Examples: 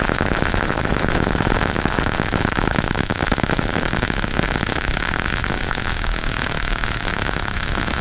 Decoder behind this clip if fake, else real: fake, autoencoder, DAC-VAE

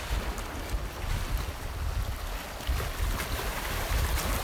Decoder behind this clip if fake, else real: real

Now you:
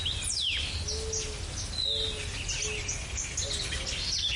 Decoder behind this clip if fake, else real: real